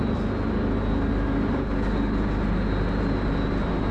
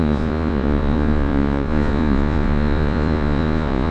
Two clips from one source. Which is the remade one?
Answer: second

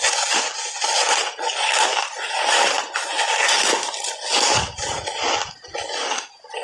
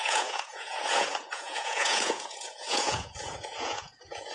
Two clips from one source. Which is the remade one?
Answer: second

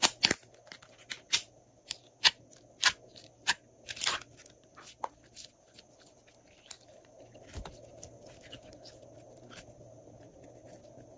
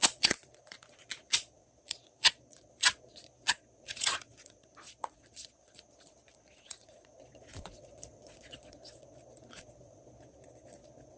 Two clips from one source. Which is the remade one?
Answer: second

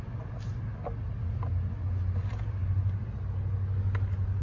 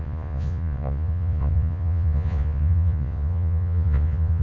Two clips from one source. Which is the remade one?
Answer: second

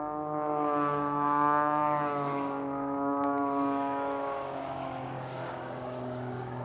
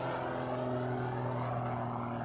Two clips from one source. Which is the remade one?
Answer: first